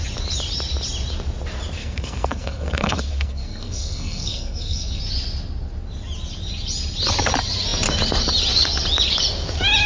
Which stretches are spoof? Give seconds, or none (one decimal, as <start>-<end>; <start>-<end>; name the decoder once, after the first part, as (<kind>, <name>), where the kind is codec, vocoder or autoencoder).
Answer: 1.8-5.0 (codec, SNAC)